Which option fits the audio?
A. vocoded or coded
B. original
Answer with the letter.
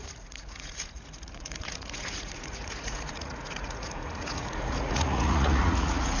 A